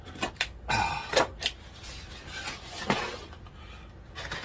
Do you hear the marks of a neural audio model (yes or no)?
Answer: no